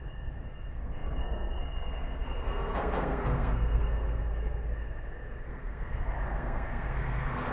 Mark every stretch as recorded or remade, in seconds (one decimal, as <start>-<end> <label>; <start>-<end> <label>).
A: 0.0-7.5 remade